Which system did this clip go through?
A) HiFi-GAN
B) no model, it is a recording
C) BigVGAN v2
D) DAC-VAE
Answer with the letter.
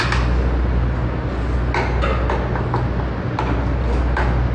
B